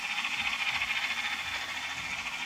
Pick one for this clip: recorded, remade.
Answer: recorded